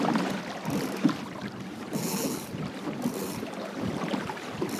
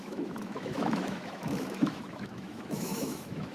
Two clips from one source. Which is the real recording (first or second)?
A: first